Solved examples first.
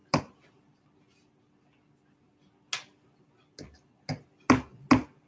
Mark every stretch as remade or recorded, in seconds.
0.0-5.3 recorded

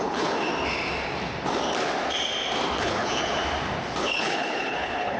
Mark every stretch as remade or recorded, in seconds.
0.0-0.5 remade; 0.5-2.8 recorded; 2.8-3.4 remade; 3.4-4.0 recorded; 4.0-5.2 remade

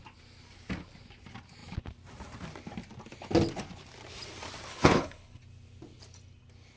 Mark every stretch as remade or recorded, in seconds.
0.0-4.7 recorded; 4.7-5.4 remade; 5.4-6.8 recorded

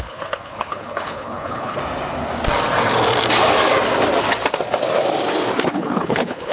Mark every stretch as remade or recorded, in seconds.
0.0-1.8 remade; 1.8-5.7 recorded; 5.7-6.5 remade